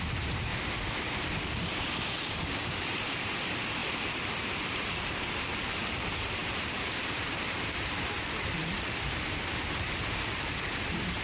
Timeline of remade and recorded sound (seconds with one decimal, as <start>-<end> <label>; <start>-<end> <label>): 0.0-0.5 remade; 0.5-2.3 recorded; 2.3-11.2 remade